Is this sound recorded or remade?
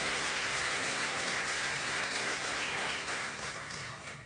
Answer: remade